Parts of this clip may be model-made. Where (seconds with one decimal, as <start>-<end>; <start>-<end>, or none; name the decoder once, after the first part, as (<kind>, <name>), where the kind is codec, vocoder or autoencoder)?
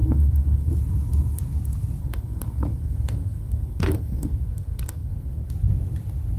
0.0-0.7 (codec, SNAC); 2.0-5.5